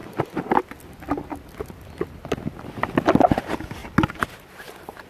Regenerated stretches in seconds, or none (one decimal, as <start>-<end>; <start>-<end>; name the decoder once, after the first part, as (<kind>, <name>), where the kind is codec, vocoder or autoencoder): none

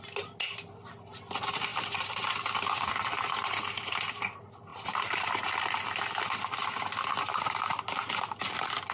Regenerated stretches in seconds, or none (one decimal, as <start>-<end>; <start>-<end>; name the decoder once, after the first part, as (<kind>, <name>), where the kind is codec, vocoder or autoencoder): 1.7-2.5 (vocoder, BigVGAN v2); 4.7-6.8

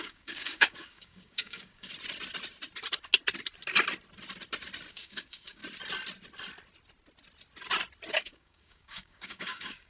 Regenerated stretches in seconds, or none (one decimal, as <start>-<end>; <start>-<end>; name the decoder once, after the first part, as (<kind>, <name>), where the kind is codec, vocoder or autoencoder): 0.0-1.9 (codec, DAC); 4.9-5.6; 8.1-9.9

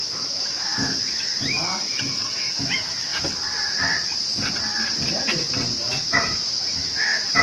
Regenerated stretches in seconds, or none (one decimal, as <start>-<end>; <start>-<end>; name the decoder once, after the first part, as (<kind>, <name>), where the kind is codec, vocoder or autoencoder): 0.0-3.1 (autoencoder, DAC-VAE); 5.8-7.4

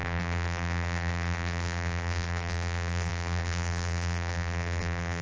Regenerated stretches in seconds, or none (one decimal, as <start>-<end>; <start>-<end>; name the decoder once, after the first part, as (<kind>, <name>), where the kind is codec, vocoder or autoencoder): 0.0-5.2 (vocoder, BigVGAN v2)

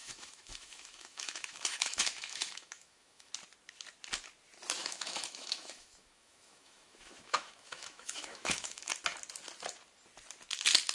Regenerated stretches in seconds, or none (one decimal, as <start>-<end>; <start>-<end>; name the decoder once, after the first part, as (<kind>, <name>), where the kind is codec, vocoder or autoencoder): 0.0-3.3 (autoencoder, DAC-VAE); 4.8-8.9

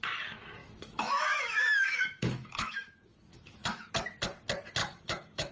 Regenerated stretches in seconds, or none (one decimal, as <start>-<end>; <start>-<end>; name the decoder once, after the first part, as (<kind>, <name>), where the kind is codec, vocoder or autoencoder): 0.6-3.9 (autoencoder, DAC-VAE); 4.8-5.5